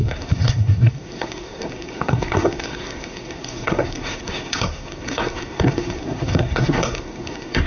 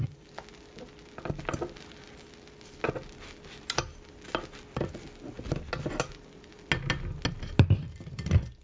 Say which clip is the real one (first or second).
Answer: second